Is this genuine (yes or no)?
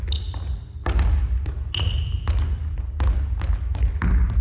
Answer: yes